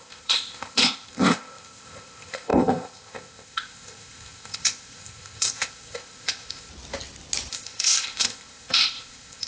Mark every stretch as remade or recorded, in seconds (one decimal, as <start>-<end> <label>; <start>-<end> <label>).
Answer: 0.0-6.7 remade; 6.7-7.5 recorded; 7.5-9.5 remade

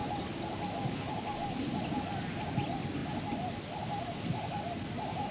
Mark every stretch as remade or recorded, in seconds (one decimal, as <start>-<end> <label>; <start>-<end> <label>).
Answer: 0.0-5.3 recorded

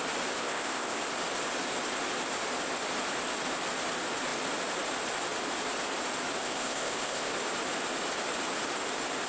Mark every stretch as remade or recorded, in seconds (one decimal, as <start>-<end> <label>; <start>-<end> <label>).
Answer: 0.0-0.4 recorded; 0.4-1.0 remade; 1.0-6.4 recorded; 6.4-7.3 remade; 7.3-9.3 recorded